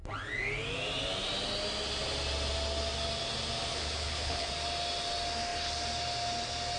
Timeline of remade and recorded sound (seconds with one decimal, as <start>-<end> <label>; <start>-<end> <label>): 0.0-3.7 recorded; 3.7-4.5 remade; 4.5-6.8 recorded